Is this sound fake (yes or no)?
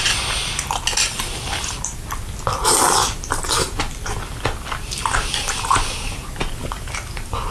no